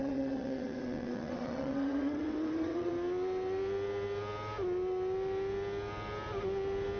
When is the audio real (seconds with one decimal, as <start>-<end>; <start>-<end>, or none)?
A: 2.9-7.0